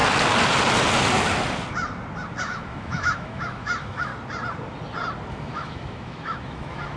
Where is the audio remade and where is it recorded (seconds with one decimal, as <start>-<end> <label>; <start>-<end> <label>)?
0.0-2.4 recorded; 2.4-4.1 remade; 4.1-5.3 recorded; 5.3-7.0 remade